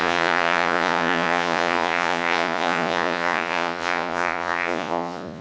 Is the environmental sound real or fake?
fake